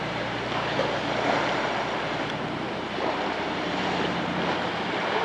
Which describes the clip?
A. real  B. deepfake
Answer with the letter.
B